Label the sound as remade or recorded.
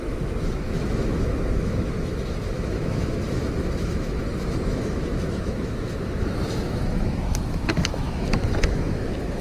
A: remade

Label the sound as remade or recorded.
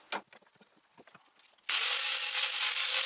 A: recorded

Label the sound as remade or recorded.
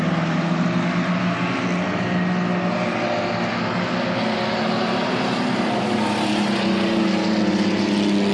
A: recorded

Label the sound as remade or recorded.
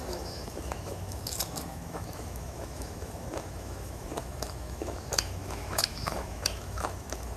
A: remade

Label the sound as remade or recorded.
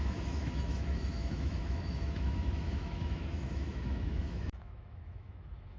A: remade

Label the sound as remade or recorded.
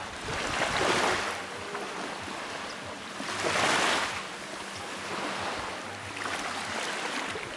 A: recorded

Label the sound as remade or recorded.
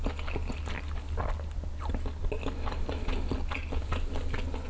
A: recorded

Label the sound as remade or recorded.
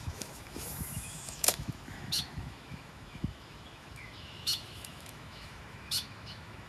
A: remade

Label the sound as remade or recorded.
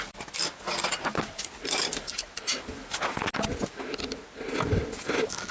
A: recorded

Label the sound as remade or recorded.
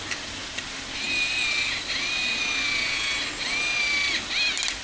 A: recorded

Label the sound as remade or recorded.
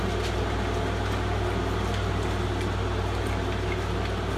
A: recorded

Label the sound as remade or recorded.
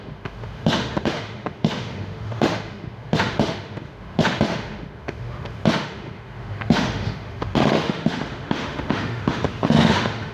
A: remade